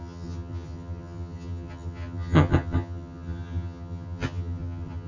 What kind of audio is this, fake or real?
fake